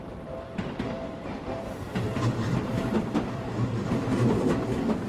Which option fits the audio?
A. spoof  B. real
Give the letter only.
A